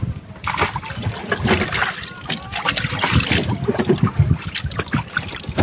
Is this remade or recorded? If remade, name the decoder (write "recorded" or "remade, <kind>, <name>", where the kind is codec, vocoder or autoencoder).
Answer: recorded